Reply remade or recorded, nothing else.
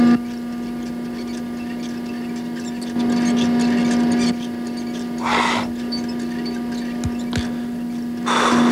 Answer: recorded